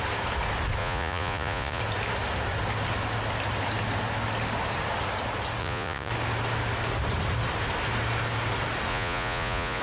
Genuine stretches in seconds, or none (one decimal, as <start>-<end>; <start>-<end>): 0.0-0.8; 1.8-5.6; 6.1-8.9